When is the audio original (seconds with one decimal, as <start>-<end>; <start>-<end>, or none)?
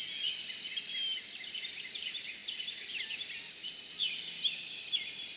0.0-5.4